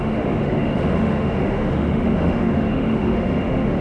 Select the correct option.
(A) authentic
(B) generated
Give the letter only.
B